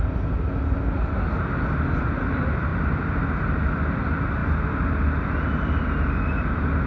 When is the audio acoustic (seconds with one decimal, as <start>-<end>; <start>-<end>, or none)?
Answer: 0.0-6.9